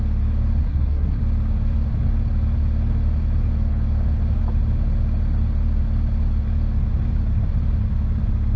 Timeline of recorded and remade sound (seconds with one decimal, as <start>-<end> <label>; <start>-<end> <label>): 0.0-0.6 recorded; 0.6-1.2 remade; 1.2-8.6 recorded